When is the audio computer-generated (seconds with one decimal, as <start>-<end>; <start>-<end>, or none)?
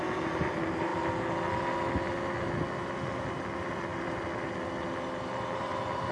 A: none